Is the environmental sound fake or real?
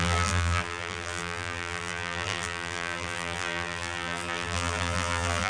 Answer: fake